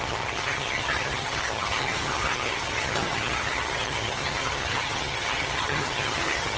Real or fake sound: fake